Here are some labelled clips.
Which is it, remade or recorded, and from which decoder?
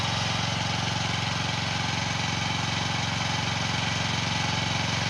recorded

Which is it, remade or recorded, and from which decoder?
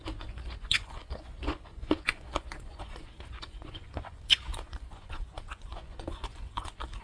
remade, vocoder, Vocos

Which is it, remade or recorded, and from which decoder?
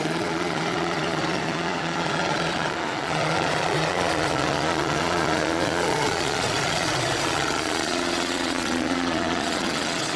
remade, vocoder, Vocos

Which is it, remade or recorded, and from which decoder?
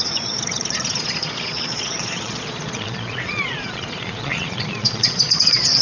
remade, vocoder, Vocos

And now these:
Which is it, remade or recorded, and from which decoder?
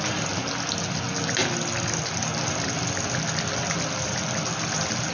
recorded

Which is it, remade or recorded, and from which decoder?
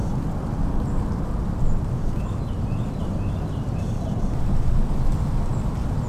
recorded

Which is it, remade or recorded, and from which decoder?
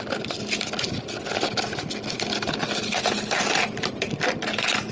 recorded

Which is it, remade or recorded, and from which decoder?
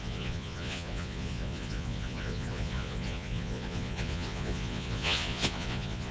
remade, vocoder, Vocos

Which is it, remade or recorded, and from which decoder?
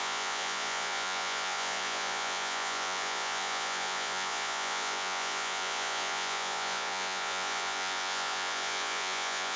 remade, vocoder, Vocos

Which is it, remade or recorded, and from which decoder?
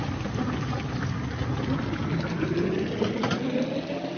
recorded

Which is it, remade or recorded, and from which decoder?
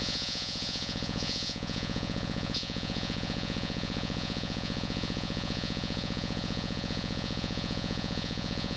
remade, vocoder, Vocos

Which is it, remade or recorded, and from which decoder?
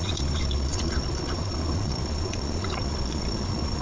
remade, vocoder, Vocos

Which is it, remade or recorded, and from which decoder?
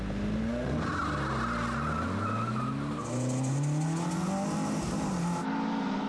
recorded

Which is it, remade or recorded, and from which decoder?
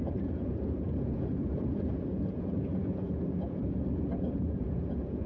remade, vocoder, Vocos